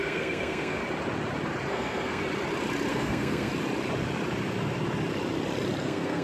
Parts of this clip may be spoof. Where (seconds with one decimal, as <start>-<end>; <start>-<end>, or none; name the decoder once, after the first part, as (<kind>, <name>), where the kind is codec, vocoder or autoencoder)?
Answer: 0.0-0.8 (codec, SNAC); 1.7-2.2; 2.9-3.5; 5.8-6.2